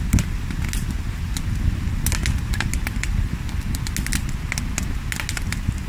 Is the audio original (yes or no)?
yes